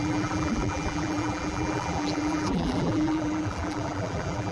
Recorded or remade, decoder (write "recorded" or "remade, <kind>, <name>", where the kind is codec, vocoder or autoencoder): remade, vocoder, BigVGAN v2